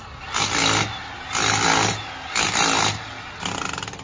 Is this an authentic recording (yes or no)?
yes